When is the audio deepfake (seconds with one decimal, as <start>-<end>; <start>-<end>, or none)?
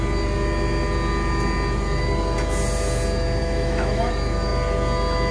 3.4-4.1